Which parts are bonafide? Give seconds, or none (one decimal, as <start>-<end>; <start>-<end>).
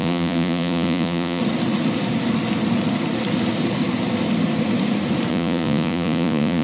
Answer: 1.4-5.3